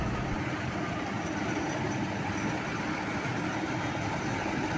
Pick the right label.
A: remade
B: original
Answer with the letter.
B